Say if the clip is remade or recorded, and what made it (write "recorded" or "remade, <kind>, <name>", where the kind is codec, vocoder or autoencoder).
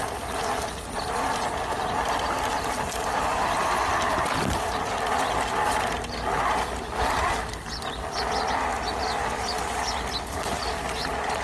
recorded